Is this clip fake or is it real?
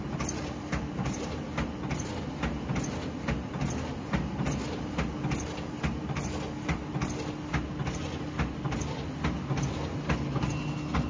real